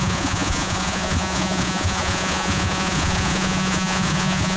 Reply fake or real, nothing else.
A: fake